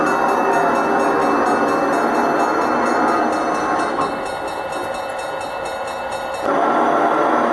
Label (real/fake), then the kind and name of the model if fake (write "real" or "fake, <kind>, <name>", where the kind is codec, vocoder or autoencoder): real